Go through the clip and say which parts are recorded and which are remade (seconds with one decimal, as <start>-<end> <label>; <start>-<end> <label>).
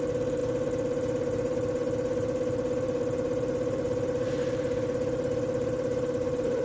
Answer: 0.0-6.6 remade